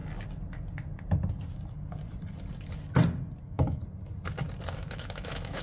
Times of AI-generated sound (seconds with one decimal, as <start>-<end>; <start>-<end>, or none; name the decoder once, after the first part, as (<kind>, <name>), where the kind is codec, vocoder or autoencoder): 3.4-3.8 (autoencoder, DAC-VAE); 4.7-5.6

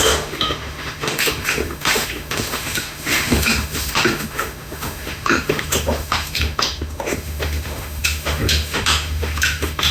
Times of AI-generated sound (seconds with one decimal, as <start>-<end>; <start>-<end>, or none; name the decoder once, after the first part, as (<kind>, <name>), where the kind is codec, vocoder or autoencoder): 0.0-9.9 (autoencoder, DAC-VAE)

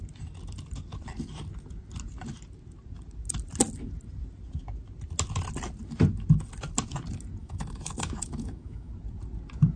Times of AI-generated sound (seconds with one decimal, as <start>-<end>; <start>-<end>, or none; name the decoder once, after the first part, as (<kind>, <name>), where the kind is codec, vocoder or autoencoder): 7.4-8.9 (autoencoder, DAC-VAE)

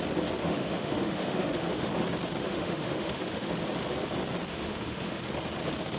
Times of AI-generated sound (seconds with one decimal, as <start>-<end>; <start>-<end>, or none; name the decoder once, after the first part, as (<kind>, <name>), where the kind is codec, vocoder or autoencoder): 0.4-1.9 (autoencoder, DAC-VAE); 2.4-3.5; 4.5-5.2

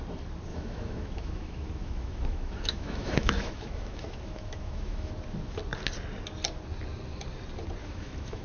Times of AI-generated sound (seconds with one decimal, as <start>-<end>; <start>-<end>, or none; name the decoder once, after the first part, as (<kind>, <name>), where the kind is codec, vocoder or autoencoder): 0.5-5.1 (autoencoder, DAC-VAE); 7.8-8.4

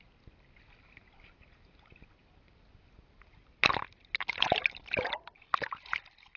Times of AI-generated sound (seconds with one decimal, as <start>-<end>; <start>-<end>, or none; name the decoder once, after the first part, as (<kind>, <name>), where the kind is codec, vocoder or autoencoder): none